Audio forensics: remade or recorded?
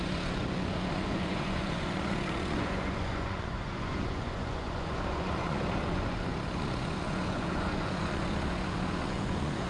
remade